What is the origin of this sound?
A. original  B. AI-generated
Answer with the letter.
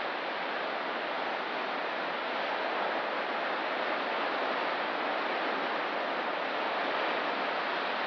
A